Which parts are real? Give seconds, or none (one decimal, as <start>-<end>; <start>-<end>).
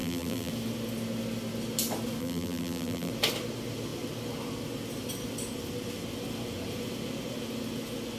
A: 0.5-2.2; 3.1-8.2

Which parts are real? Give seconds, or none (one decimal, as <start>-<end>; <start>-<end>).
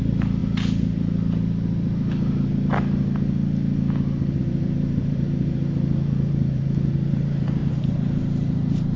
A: 0.4-4.4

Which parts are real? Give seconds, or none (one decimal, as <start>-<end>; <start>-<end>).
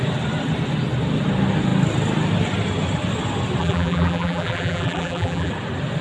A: 0.0-3.6; 5.5-6.0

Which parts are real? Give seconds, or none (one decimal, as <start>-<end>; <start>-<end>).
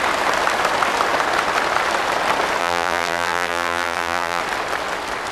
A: 0.0-2.6; 4.4-5.3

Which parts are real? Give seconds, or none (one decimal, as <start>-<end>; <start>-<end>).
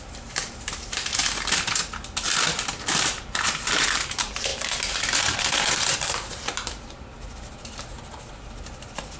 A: 1.2-3.0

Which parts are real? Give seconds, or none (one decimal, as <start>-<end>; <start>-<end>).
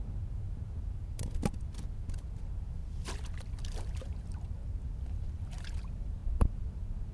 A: 2.8-3.6